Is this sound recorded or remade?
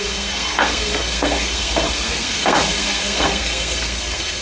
remade